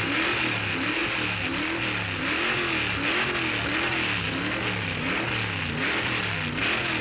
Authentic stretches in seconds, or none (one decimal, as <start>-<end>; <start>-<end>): 0.0-7.0